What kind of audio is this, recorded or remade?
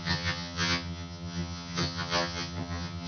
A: remade